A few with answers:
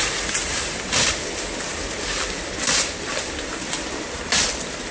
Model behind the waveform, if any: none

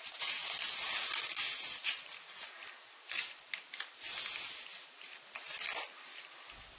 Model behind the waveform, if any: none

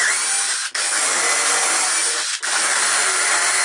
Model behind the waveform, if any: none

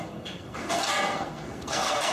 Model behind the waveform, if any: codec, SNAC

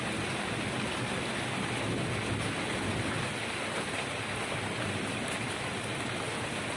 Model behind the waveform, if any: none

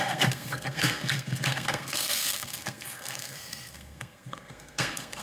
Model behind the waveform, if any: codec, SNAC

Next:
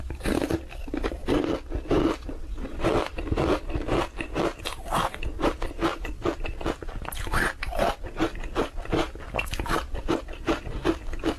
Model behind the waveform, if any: none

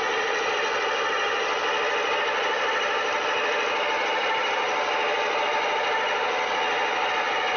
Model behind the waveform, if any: none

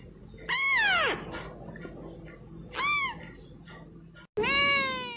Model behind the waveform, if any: none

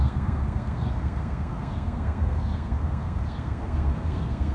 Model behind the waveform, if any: codec, SNAC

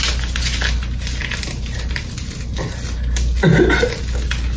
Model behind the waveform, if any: none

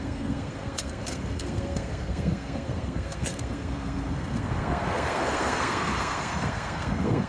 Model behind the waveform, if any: codec, SNAC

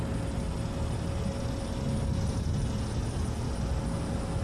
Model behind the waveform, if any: none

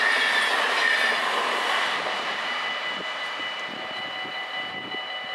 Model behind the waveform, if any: none